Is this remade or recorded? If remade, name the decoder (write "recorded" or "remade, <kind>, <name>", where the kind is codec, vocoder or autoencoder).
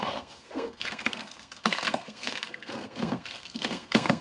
remade, codec, SNAC